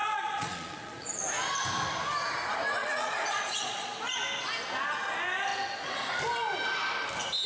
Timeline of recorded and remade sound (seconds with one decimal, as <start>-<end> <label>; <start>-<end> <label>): 0.0-1.2 remade; 1.2-2.8 recorded; 2.8-3.9 remade; 3.9-7.5 recorded

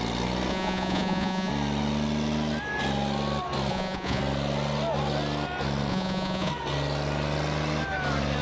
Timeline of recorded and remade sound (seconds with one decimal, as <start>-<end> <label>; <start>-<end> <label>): 0.0-0.5 recorded; 0.5-1.5 remade; 1.5-3.7 recorded; 3.7-4.2 remade; 4.2-5.9 recorded; 5.9-6.5 remade; 6.5-8.4 recorded

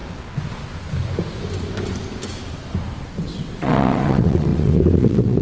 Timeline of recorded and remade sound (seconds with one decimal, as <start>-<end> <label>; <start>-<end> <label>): 0.0-3.2 recorded; 3.2-5.4 remade

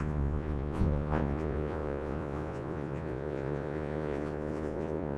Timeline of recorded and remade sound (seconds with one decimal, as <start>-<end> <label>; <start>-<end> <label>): 0.0-5.2 remade

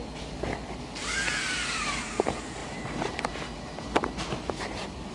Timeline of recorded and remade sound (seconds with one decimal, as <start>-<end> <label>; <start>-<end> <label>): 0.0-2.6 recorded; 2.6-3.3 remade; 3.3-5.1 recorded

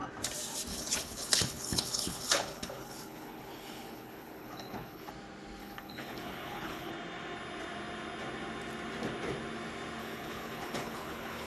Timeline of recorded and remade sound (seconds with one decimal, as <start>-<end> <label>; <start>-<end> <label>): 0.0-0.7 recorded; 0.7-5.1 remade; 5.1-5.6 recorded; 5.6-6.9 remade; 6.9-10.0 recorded; 10.0-11.5 remade

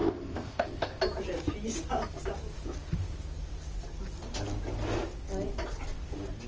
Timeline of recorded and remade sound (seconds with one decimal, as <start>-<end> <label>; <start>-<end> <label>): 0.0-1.0 remade; 1.0-6.5 recorded

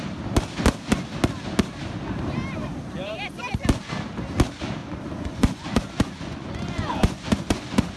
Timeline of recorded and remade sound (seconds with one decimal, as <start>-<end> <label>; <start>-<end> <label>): 0.0-4.8 recorded; 4.8-8.0 remade